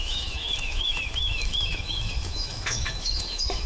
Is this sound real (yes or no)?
no